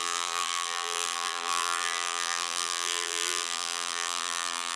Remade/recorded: remade